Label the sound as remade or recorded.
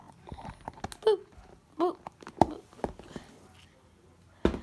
recorded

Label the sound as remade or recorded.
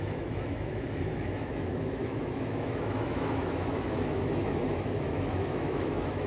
remade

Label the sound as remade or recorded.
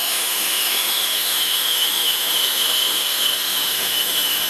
remade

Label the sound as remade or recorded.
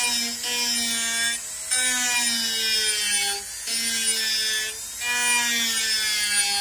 recorded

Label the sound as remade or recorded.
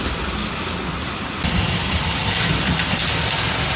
recorded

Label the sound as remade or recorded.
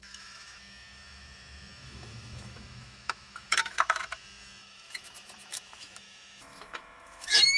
remade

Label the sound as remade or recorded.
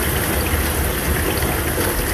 recorded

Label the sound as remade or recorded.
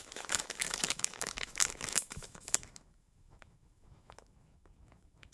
remade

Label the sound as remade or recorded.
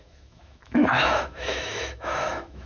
remade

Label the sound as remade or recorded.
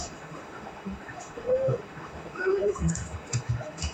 remade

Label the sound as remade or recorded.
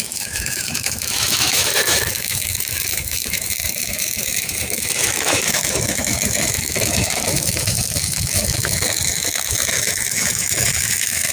remade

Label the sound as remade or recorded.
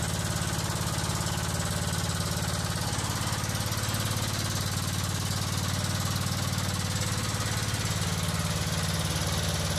recorded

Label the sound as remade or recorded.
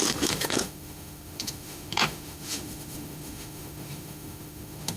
remade